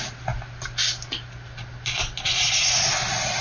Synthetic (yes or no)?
no